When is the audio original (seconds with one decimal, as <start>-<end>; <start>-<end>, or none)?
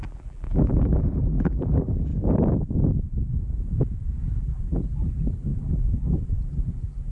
2.1-4.4